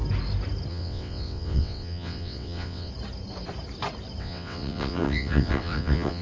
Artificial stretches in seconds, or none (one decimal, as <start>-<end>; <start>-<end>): 0.7-2.9; 4.2-6.2